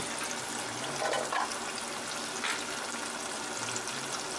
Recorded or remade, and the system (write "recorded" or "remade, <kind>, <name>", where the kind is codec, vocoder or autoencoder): recorded